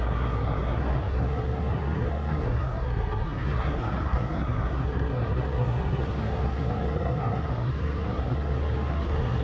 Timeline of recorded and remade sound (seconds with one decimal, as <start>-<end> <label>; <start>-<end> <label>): 0.0-9.4 remade